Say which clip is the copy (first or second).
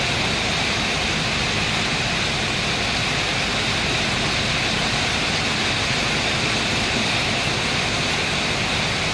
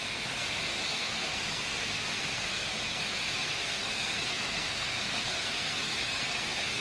second